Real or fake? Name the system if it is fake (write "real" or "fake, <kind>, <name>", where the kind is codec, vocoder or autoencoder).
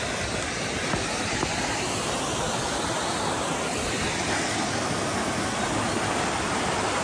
real